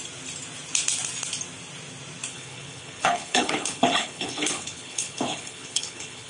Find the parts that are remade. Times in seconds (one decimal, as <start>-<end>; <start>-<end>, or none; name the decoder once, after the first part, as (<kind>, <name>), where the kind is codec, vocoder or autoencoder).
2.3-6.3 (codec, HILCodec)

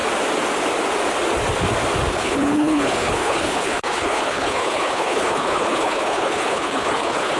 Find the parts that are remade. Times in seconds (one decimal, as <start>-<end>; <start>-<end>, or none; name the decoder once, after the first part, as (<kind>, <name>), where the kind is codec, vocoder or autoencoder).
2.1-7.4 (codec, HILCodec)

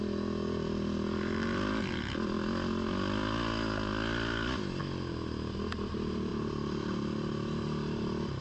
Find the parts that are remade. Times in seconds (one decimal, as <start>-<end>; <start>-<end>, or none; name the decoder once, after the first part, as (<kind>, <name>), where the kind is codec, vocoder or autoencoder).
none

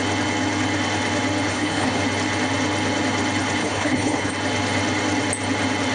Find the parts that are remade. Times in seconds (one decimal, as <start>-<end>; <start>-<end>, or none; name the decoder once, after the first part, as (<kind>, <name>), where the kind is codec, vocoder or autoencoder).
1.5-2.0 (codec, HILCodec); 3.6-4.3